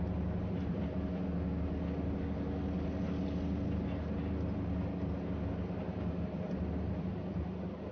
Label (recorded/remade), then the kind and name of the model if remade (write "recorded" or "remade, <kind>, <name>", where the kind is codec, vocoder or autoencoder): recorded